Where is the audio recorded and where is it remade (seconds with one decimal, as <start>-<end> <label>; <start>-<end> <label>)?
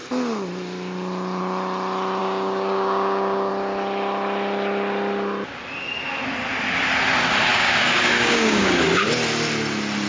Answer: 0.0-2.2 recorded; 2.2-3.5 remade; 3.5-7.5 recorded; 7.5-8.8 remade; 8.8-10.1 recorded